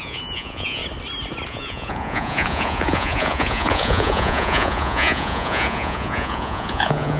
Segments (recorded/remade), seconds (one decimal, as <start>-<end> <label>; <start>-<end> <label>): 0.0-0.8 remade; 0.8-1.5 recorded; 1.5-7.2 remade